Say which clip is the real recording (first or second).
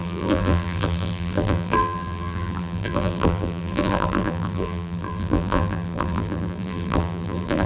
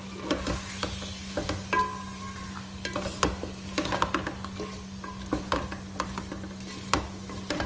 second